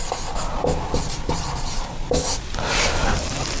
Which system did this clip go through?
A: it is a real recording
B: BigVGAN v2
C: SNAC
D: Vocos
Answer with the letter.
A